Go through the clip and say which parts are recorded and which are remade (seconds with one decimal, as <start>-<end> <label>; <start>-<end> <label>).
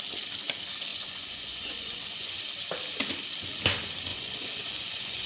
0.0-0.9 recorded; 0.9-2.4 remade; 2.4-4.1 recorded; 4.1-5.3 remade